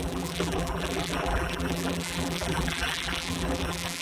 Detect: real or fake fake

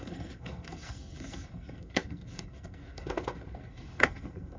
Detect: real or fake fake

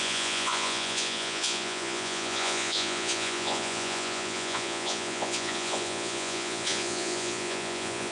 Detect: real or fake fake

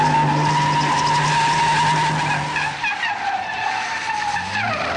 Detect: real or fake real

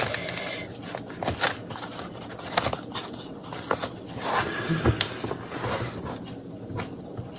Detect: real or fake real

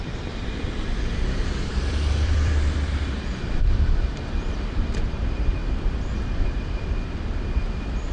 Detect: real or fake fake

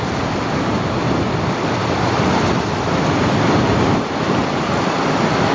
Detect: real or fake real